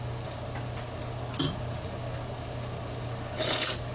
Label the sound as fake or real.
real